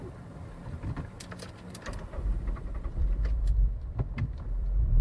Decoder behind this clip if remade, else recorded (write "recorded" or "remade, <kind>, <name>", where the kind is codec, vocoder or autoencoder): remade, vocoder, BigVGAN v2